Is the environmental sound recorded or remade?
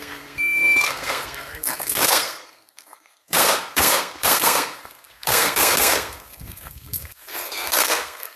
remade